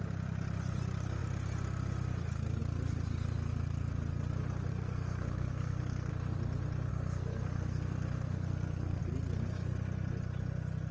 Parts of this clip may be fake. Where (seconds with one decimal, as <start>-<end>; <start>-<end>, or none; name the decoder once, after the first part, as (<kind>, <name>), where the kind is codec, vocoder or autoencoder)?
4.7-6.1 (codec, SNAC); 6.9-9.0